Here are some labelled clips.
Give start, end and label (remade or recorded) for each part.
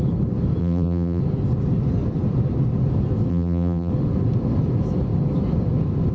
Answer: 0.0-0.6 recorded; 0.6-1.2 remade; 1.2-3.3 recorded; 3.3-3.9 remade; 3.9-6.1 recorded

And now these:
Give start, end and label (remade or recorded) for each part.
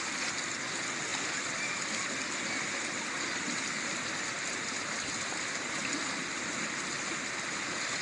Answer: 0.0-8.0 recorded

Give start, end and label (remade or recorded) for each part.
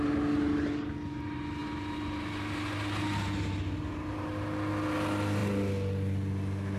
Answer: 0.0-6.8 recorded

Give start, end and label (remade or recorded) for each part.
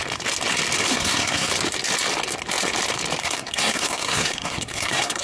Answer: 0.0-0.9 recorded; 0.9-1.5 remade; 1.5-3.2 recorded; 3.2-5.2 remade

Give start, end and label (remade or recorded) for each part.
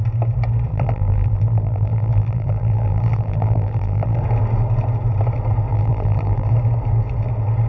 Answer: 0.0-0.7 recorded; 0.7-4.2 remade; 4.2-5.7 recorded; 5.7-6.5 remade; 6.5-7.7 recorded